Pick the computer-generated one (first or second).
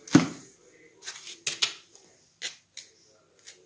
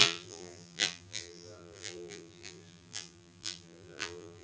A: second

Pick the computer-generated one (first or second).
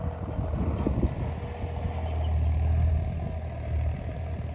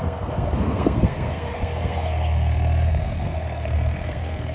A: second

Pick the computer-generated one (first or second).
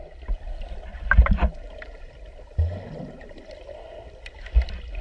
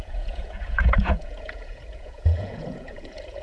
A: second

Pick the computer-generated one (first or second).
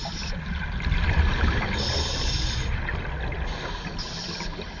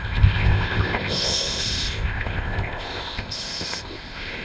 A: second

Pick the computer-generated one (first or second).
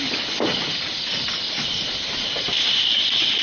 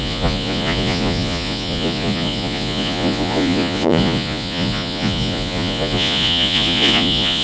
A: second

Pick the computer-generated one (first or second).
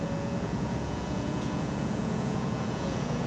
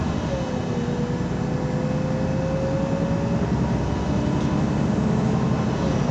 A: first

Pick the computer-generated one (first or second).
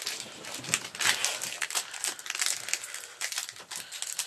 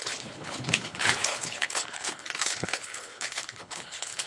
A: second